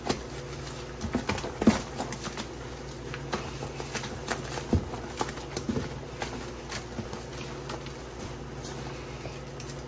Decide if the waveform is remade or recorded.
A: recorded